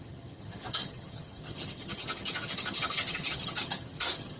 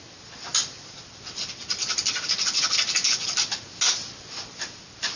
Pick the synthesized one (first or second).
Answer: first